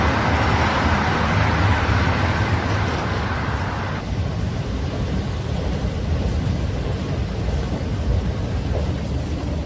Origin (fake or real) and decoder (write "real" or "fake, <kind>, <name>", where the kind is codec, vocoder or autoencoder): real